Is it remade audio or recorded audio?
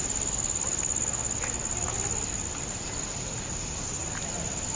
recorded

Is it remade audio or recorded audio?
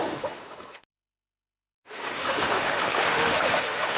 remade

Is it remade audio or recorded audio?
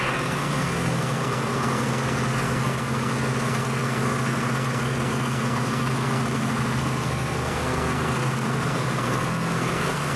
remade